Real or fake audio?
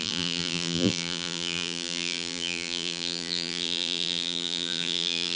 fake